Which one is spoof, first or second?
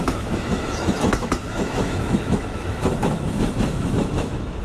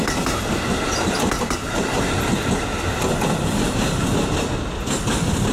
first